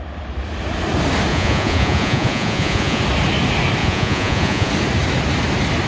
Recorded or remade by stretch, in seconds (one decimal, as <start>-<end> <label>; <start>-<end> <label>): 0.0-1.3 recorded; 1.3-3.0 remade; 3.0-3.8 recorded; 3.8-4.7 remade; 4.7-5.9 recorded